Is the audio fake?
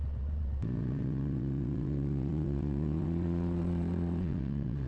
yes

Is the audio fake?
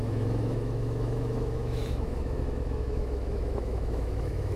yes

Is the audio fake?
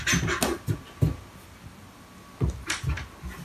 no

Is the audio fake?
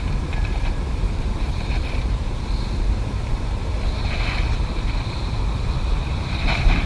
yes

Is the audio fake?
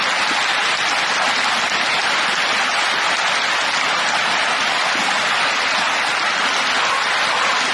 no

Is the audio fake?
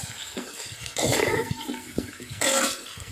yes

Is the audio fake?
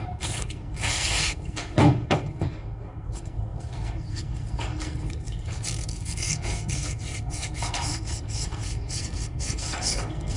yes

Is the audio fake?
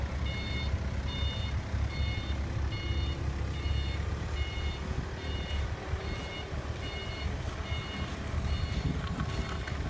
no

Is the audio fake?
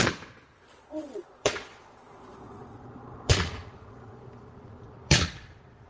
yes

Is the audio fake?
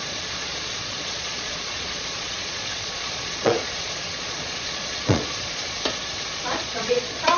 yes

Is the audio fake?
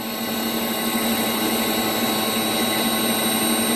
no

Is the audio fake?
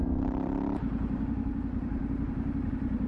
yes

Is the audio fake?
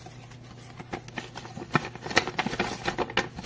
no